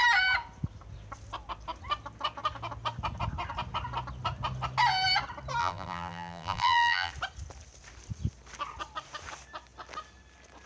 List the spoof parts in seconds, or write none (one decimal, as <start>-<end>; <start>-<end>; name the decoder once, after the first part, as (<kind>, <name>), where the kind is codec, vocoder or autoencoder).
5.6-7.1 (vocoder, BigVGAN v2)